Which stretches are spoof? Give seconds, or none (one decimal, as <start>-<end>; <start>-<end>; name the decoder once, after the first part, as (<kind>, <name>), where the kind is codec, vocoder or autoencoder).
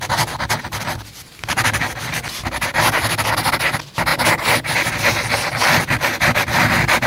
0.7-1.3 (vocoder, BigVGAN v2)